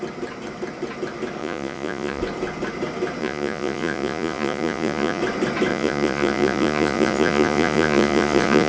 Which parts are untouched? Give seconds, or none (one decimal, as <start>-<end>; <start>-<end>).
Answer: 0.0-1.4; 2.2-3.2; 5.2-5.7